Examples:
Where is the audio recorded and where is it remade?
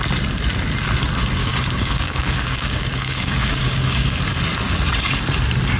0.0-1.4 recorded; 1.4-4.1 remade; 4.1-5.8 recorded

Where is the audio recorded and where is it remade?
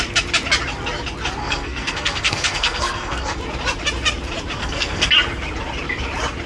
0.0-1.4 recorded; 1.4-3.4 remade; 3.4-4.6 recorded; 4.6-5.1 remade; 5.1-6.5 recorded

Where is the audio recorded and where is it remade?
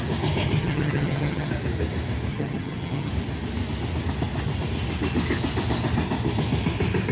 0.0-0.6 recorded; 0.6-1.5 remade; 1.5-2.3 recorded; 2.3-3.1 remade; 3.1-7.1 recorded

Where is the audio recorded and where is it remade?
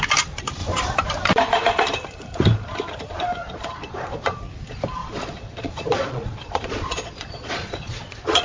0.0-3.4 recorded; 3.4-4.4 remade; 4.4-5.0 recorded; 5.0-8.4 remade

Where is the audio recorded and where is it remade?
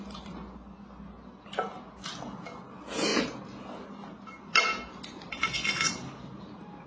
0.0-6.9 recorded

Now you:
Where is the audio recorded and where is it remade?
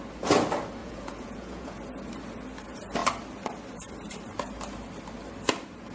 0.0-0.8 recorded; 0.8-1.8 remade; 1.8-5.9 recorded